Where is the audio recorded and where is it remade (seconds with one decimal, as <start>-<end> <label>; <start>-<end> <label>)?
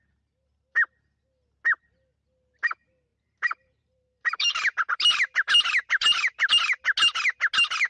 0.0-3.1 recorded; 3.1-6.5 remade; 6.5-7.9 recorded